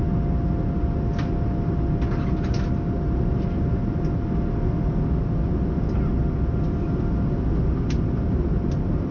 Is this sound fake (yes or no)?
no